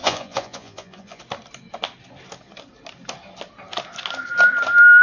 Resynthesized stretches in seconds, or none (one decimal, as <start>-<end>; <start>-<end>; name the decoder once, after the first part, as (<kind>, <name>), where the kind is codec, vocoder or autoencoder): 0.0-1.2 (vocoder, Vocos)